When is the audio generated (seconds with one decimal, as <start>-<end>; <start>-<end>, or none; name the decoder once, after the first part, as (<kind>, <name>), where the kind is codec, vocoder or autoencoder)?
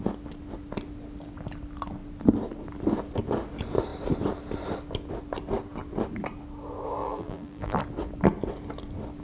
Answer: 7.0-7.8 (vocoder, BigVGAN v2)